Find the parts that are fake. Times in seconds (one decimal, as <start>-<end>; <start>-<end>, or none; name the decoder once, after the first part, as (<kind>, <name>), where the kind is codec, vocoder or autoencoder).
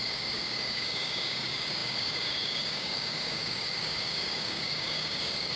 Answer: 0.0-5.6 (codec, DAC)